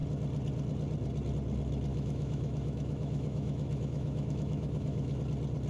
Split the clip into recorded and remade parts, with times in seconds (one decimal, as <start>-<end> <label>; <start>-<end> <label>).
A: 0.0-1.9 recorded; 1.9-5.2 remade; 5.2-5.7 recorded